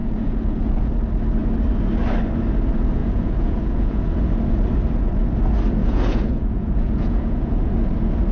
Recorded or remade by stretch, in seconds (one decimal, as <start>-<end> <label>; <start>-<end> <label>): 0.0-0.9 remade; 0.9-3.0 recorded; 3.0-4.0 remade; 4.0-5.8 recorded; 5.8-7.7 remade; 7.7-8.3 recorded

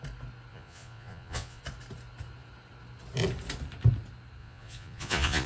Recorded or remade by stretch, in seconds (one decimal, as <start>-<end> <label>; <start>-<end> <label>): 0.0-0.5 recorded; 0.5-1.6 remade; 1.6-4.4 recorded; 4.4-5.5 remade

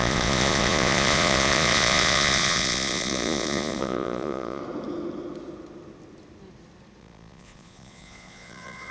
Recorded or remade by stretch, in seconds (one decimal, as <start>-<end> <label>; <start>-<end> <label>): 0.0-4.6 remade; 4.6-7.0 recorded; 7.0-8.9 remade

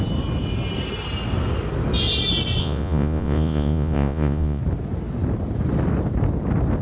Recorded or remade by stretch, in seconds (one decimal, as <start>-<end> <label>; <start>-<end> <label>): 0.0-2.6 recorded; 2.6-4.6 remade; 4.6-6.8 recorded

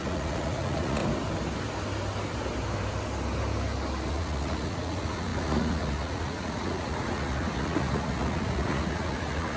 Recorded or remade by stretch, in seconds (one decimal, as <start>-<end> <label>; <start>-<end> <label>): 0.0-1.0 remade; 1.0-4.1 recorded; 4.1-9.6 remade

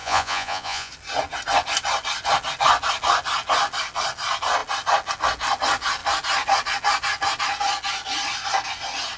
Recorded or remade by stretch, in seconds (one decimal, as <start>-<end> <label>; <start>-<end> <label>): 0.0-0.9 remade; 0.9-9.2 recorded

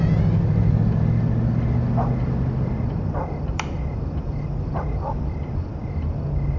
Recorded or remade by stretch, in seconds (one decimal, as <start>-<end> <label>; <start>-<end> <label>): 0.0-6.6 recorded